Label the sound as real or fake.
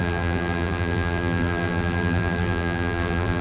fake